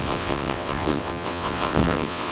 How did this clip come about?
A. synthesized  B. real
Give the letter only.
A